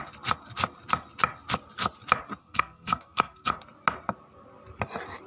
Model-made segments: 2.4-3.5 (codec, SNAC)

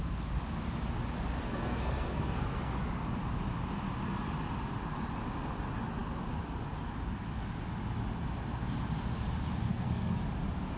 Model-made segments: 1.4-2.8 (codec, SNAC); 9.7-10.2

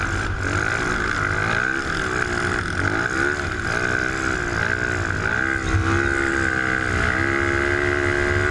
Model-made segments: none

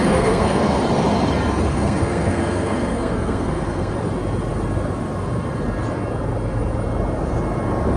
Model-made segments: 0.0-0.8 (codec, SNAC); 1.7-3.9

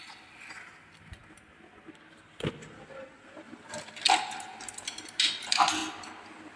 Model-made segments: none

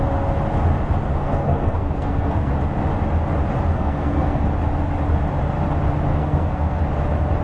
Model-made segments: 1.1-2.5 (codec, SNAC); 3.7-4.4; 6.1-6.8

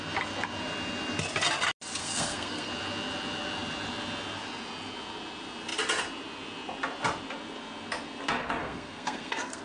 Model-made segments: 2.0-2.7 (codec, SNAC); 8.6-9.6